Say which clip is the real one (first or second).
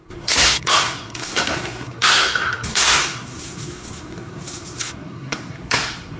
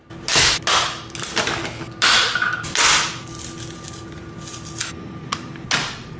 second